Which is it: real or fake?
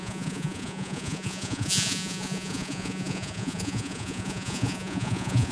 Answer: fake